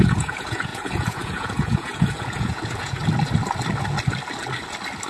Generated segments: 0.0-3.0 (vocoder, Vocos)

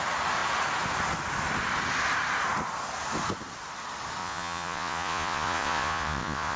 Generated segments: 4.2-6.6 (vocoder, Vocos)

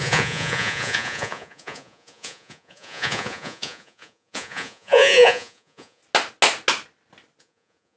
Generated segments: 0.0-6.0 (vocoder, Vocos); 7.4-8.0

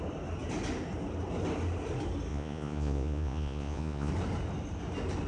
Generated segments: 2.3-4.1 (vocoder, Vocos)

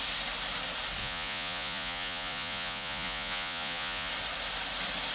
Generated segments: 1.0-4.1 (vocoder, Vocos)